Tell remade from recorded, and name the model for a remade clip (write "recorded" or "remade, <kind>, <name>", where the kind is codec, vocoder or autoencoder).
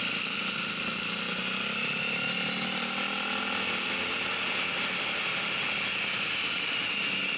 recorded